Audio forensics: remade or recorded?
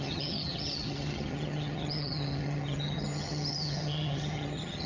remade